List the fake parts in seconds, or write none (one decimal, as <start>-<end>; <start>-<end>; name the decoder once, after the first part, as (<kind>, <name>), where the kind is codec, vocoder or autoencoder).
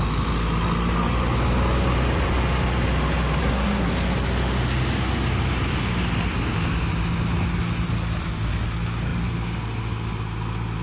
3.4-3.9 (codec, SNAC)